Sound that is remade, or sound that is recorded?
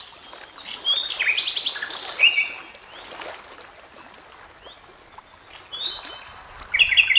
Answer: recorded